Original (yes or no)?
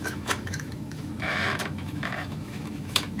no